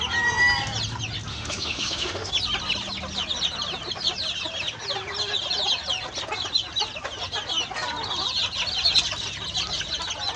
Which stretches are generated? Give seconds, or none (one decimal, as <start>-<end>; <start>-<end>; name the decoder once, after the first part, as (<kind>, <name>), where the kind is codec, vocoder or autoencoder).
1.3-2.3 (autoencoder, DAC-VAE)